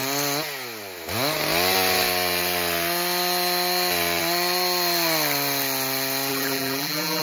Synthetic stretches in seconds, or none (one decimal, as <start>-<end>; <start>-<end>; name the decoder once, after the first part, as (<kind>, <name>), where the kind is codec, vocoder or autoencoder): 6.3-7.2 (vocoder, BigVGAN v2)